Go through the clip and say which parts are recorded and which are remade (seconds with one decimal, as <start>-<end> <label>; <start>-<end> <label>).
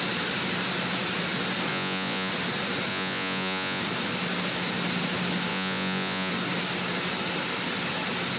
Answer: 0.0-1.7 recorded; 1.7-2.3 remade; 2.3-2.9 recorded; 2.9-3.8 remade; 3.8-5.5 recorded; 5.5-6.3 remade; 6.3-8.4 recorded